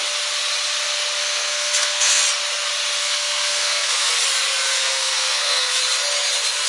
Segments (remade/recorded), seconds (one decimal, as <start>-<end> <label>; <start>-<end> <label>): 0.0-1.2 recorded; 1.2-2.2 remade; 2.2-3.0 recorded; 3.0-4.1 remade; 4.1-4.7 recorded; 4.7-5.8 remade; 5.8-6.7 recorded